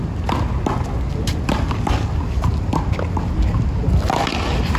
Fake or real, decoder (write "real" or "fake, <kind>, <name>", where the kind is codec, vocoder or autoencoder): real